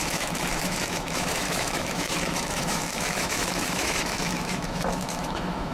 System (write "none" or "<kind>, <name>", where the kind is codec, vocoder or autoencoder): autoencoder, DAC-VAE